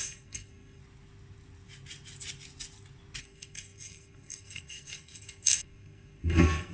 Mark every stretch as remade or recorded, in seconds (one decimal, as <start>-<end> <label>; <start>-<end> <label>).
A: 0.0-0.8 remade; 0.8-3.2 recorded; 3.2-6.7 remade